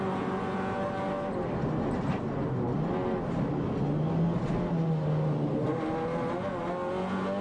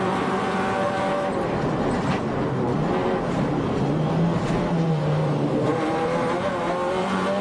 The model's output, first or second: second